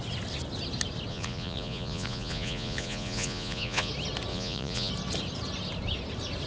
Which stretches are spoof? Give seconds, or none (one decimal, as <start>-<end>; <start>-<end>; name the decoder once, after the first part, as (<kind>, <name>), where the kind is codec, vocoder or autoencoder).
1.1-3.9 (vocoder, Vocos); 4.3-4.9